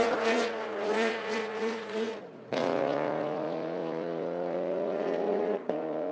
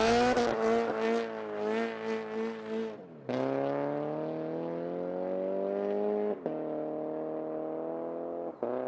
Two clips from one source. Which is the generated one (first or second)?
first